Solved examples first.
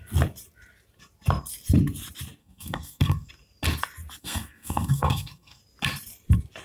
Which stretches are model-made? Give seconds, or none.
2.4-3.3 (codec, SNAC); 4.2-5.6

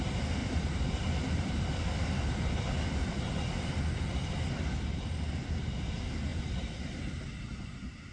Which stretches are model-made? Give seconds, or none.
0.4-2.6 (vocoder, BigVGAN v2)

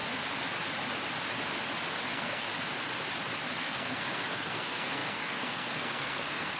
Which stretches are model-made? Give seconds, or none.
2.1-2.5 (codec, SNAC); 3.6-6.6